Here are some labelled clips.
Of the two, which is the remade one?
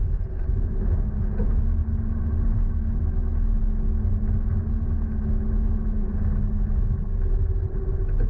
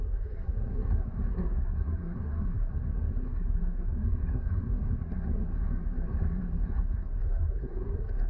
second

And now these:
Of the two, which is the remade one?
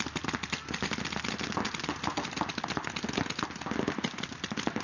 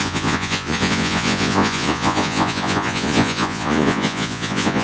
second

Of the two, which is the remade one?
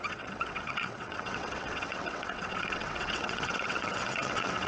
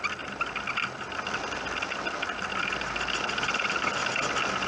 first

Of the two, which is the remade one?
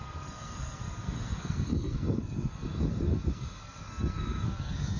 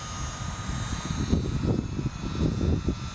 first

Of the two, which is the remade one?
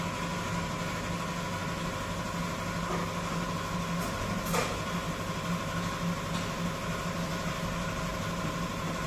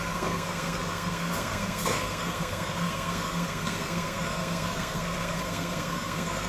second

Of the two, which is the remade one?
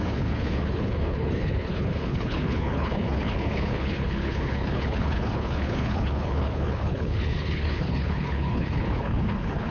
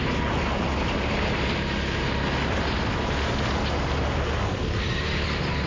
first